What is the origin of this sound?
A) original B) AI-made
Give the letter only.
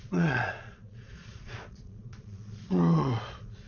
B